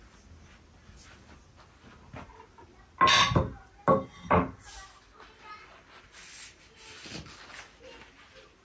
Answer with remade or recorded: recorded